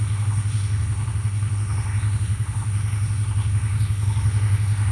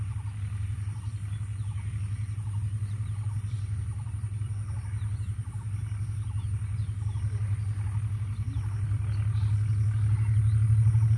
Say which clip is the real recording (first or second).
second